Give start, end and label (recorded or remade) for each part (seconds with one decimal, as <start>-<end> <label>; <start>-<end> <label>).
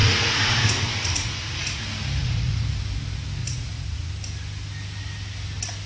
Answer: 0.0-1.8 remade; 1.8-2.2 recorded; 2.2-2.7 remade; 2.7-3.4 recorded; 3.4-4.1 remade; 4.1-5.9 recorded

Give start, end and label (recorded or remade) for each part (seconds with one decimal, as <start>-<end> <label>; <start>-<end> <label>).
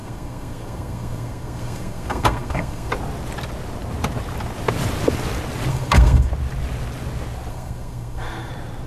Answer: 0.0-2.9 remade; 2.9-5.7 recorded; 5.7-6.3 remade; 6.3-7.5 recorded; 7.5-8.5 remade; 8.5-8.9 recorded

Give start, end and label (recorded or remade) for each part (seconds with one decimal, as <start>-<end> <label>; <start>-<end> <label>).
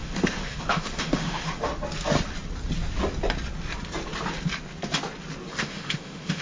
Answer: 0.0-1.7 remade; 1.7-5.5 recorded; 5.5-6.4 remade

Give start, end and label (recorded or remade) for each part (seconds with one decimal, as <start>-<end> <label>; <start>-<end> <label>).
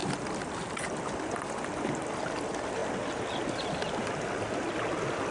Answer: 0.0-5.3 recorded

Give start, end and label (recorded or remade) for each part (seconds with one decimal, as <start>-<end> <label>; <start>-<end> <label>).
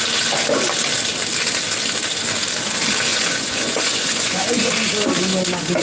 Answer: 0.0-3.1 recorded; 3.1-4.7 remade; 4.7-5.8 recorded